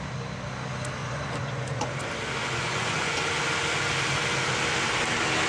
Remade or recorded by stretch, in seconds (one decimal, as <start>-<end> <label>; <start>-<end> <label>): 0.0-1.0 recorded; 1.0-1.9 remade; 1.9-2.4 recorded; 2.4-3.2 remade; 3.2-5.5 recorded